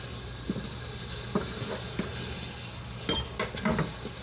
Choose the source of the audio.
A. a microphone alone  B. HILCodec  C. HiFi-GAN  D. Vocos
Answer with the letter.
A